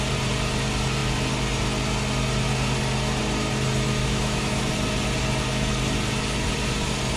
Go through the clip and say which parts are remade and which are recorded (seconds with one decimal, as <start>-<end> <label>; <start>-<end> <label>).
0.0-4.0 recorded; 4.0-4.7 remade; 4.7-7.2 recorded